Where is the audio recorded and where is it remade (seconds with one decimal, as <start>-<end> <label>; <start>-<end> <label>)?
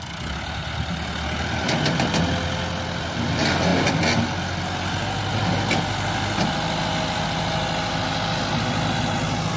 0.0-9.6 recorded